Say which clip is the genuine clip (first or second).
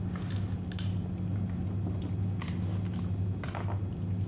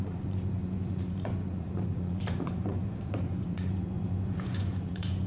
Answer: first